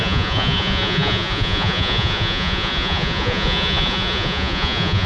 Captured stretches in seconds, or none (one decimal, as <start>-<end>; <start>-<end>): none